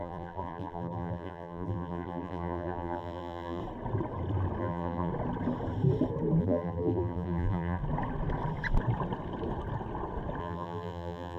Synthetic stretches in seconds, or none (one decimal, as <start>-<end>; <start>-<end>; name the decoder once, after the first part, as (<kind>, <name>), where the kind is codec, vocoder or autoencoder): 0.0-3.6 (vocoder, BigVGAN v2); 4.6-5.1; 6.4-7.8; 10.4-11.4